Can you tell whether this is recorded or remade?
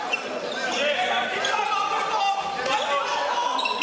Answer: recorded